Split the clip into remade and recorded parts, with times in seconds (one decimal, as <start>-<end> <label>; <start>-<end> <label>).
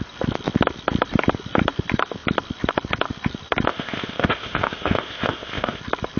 0.0-3.7 recorded; 3.7-5.8 remade; 5.8-6.2 recorded